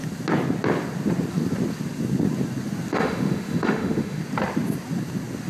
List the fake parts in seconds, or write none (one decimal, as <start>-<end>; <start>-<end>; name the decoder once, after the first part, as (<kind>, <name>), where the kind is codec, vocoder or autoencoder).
2.9-4.2 (autoencoder, DAC-VAE)